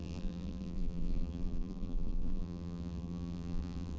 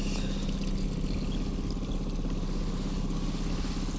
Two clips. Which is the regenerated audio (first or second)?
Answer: first